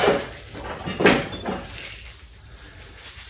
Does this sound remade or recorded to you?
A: recorded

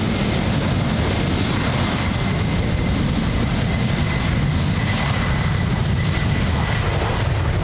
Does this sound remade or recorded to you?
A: recorded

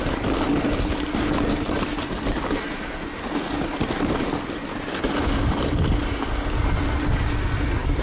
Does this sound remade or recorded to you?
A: recorded